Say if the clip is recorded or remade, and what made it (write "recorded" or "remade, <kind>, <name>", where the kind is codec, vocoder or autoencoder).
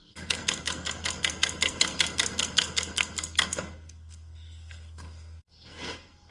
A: remade, codec, SNAC